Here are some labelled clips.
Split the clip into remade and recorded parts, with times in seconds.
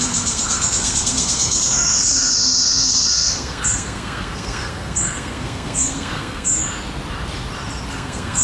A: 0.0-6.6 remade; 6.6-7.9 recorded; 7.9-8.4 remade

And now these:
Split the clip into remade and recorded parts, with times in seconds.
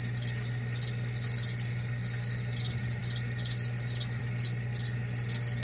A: 0.0-5.6 recorded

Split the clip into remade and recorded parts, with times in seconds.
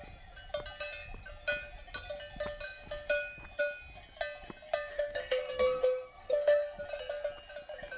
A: 0.0-4.9 recorded; 4.9-6.8 remade; 6.8-8.0 recorded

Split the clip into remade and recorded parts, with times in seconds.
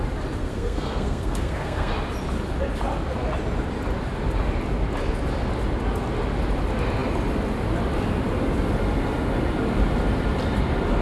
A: 0.0-0.4 recorded; 0.4-1.9 remade; 1.9-11.0 recorded